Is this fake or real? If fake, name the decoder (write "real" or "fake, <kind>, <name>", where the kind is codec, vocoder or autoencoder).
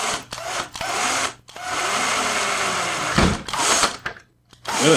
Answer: real